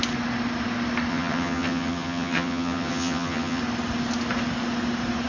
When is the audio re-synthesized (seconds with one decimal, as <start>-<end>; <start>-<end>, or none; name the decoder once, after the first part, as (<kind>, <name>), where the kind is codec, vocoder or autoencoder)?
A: 1.1-3.6 (vocoder, HiFi-GAN)

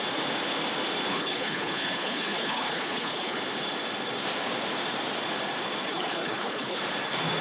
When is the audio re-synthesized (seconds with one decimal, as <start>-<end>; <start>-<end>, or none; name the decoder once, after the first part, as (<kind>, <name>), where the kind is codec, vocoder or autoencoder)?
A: 1.1-3.4 (codec, HILCodec); 5.9-6.8

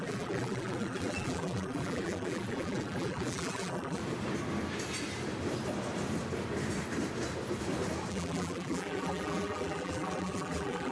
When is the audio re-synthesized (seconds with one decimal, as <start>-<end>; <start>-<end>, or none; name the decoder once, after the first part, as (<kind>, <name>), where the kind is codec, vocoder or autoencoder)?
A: 0.0-4.0 (vocoder, BigVGAN v2); 8.1-10.9